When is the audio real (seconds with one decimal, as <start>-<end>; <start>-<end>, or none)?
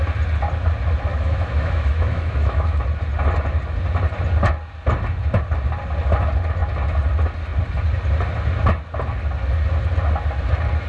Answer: 0.0-1.1; 2.8-10.9